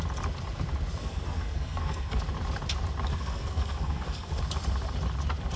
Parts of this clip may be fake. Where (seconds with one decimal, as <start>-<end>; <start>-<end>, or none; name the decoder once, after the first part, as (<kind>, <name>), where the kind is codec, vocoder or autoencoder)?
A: 1.0-2.2 (codec, SNAC); 3.1-4.4